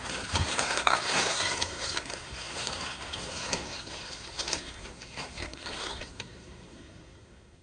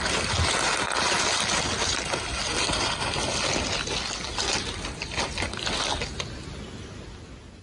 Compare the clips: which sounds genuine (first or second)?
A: second